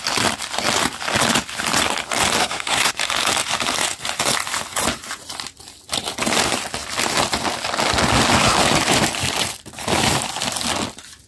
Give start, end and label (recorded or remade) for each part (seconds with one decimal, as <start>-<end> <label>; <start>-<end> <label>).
0.0-2.4 recorded; 2.4-2.9 remade; 2.9-11.3 recorded

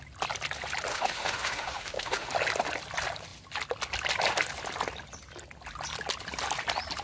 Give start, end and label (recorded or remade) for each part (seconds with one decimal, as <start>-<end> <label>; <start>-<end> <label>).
0.0-0.9 recorded; 0.9-2.3 remade; 2.3-7.0 recorded